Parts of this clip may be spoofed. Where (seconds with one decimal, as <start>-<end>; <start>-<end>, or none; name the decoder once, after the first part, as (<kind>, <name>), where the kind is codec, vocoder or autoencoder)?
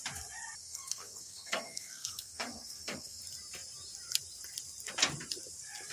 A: 0.6-3.2 (codec, SNAC)